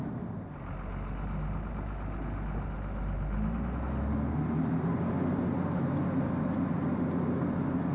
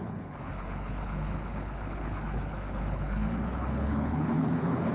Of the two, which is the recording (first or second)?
first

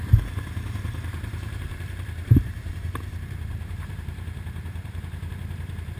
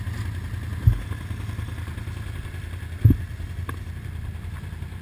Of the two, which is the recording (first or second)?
second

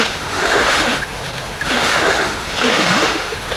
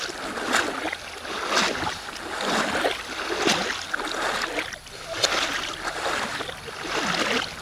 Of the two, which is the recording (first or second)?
second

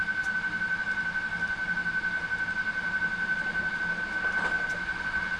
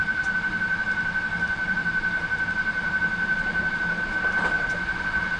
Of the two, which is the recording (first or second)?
first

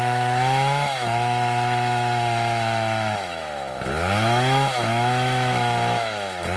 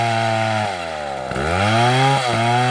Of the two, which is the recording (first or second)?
second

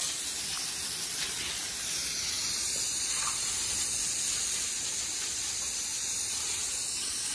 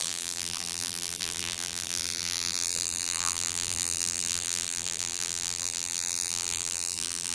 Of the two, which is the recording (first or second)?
first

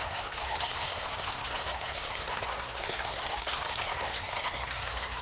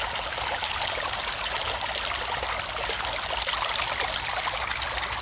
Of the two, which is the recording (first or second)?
second